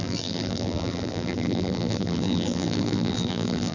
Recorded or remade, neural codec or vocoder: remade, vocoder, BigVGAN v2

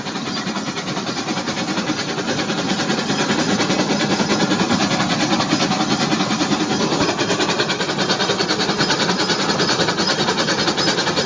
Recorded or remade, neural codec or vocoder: remade, vocoder, BigVGAN v2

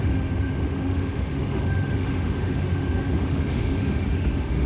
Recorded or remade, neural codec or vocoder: remade, autoencoder, DAC-VAE